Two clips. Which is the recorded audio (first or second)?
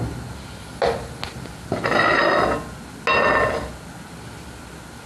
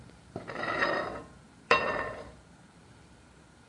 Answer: first